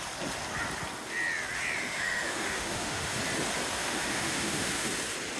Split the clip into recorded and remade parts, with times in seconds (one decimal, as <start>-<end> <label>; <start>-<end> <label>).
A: 0.0-1.8 recorded; 1.8-3.2 remade; 3.2-3.8 recorded; 3.8-4.9 remade; 4.9-5.4 recorded